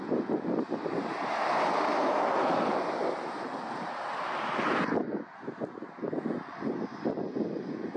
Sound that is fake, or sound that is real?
real